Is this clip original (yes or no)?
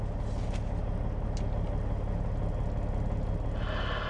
yes